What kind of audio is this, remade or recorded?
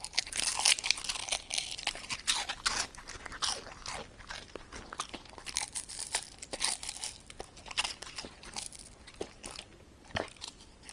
remade